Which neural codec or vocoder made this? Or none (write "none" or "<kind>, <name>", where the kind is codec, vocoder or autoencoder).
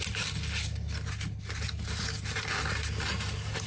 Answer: none